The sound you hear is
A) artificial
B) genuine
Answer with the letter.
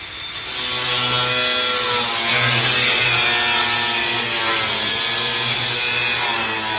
B